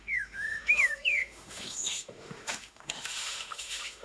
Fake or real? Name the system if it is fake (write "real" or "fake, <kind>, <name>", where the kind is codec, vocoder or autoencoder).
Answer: fake, autoencoder, DAC-VAE